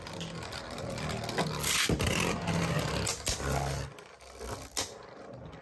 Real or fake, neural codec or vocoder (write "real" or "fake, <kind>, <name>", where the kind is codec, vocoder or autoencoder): real